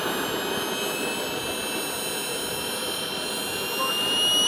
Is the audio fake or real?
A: real